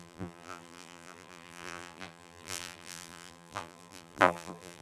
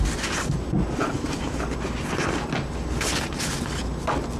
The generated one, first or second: first